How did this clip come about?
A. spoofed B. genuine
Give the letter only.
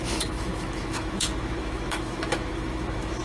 A